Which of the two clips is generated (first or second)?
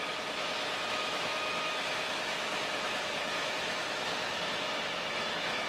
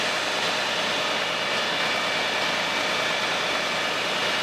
first